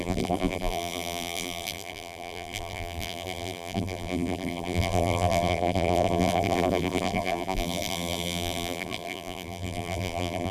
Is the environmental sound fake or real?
fake